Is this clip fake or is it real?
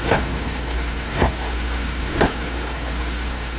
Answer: fake